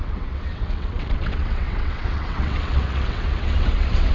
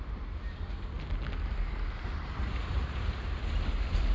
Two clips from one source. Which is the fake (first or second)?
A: first